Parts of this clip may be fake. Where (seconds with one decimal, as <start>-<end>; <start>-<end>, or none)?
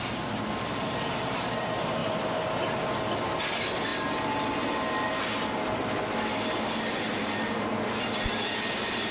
none